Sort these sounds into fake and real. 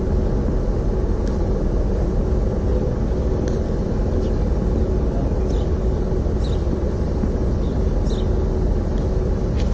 real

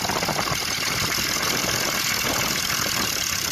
real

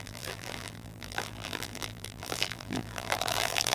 fake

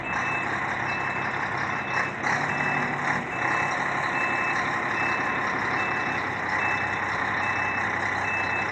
real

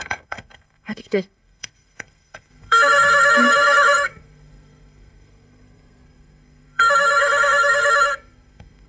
fake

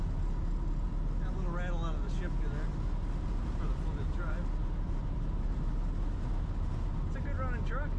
real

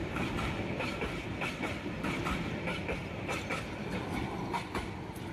fake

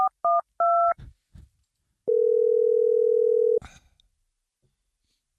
real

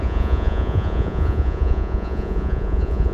fake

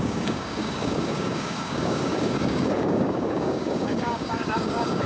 fake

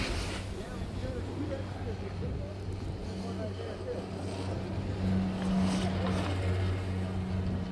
real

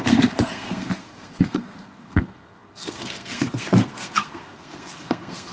fake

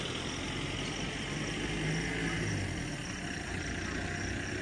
real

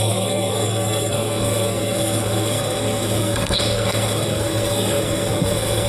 fake